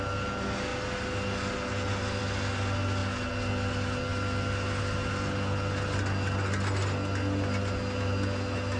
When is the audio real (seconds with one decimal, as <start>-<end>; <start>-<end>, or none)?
0.0-8.8